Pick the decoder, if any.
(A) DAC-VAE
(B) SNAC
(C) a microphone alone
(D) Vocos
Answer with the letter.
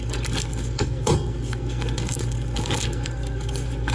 B